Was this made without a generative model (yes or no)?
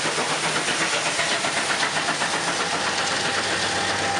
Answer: yes